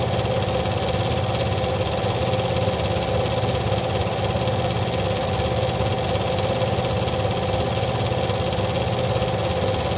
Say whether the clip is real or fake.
real